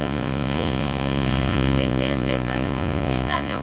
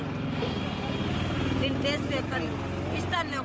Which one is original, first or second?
second